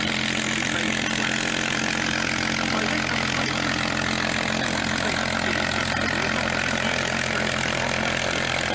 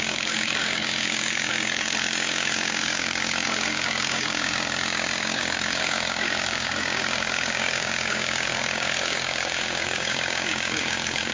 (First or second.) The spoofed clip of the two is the second